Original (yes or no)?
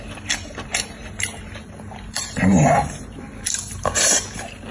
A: no